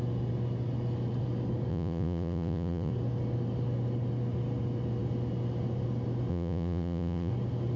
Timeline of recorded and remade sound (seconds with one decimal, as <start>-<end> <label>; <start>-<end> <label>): 0.0-1.7 recorded; 1.7-2.9 remade; 2.9-6.3 recorded; 6.3-7.3 remade; 7.3-7.8 recorded